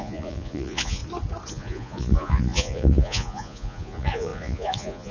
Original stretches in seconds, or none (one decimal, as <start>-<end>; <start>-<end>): 1.0-1.5